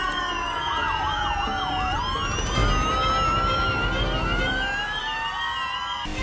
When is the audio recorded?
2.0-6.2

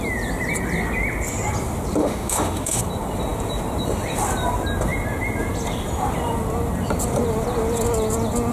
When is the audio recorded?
0.0-2.0; 2.8-8.5

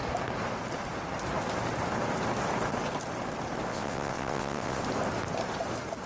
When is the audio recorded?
0.0-3.7; 4.8-6.1

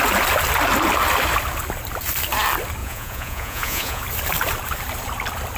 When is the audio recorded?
0.0-2.8; 4.0-5.6

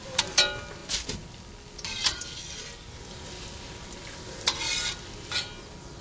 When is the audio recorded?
0.0-6.0

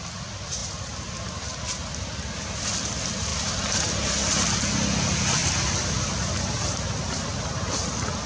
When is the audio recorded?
0.0-0.6; 1.2-3.3; 3.8-5.4; 6.6-8.3

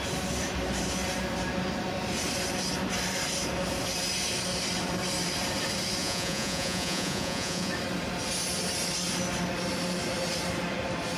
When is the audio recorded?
0.0-6.0; 7.7-11.2